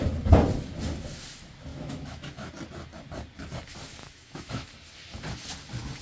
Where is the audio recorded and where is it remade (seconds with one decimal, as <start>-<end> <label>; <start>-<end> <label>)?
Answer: 0.0-1.7 recorded; 1.7-2.5 remade; 2.5-4.0 recorded; 4.0-4.7 remade; 4.7-6.0 recorded